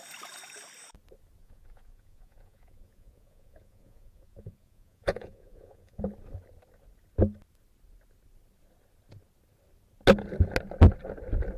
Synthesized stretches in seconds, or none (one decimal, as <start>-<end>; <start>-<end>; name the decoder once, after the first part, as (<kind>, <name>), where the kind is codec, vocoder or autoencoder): 1.4-6.0 (vocoder, Vocos)